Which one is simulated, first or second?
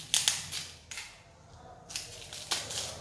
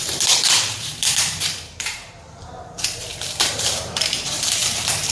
second